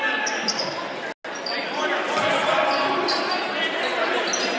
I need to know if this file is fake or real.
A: real